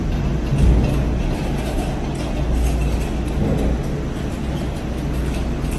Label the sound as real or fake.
real